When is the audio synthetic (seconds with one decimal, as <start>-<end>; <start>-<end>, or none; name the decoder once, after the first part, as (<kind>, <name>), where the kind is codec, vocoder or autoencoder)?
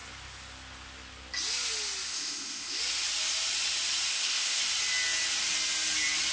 2.1-2.8 (codec, ZipCodec); 4.1-4.6